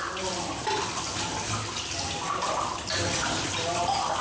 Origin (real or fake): real